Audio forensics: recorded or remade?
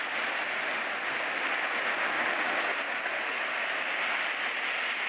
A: recorded